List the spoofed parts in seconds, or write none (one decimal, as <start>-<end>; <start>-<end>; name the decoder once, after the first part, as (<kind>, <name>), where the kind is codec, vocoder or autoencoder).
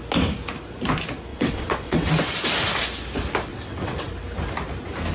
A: 1.3-2.1 (vocoder, WaveNeXt); 3.5-4.1